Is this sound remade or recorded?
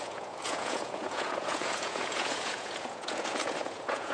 remade